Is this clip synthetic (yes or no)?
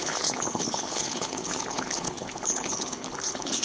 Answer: yes